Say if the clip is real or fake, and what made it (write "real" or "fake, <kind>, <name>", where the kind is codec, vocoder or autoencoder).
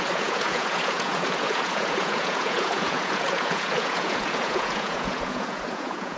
fake, vocoder, Vocos